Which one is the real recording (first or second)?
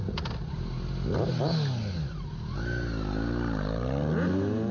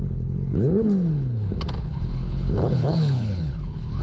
first